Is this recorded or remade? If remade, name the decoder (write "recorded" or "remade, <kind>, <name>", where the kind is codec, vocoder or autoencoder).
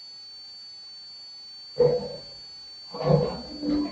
recorded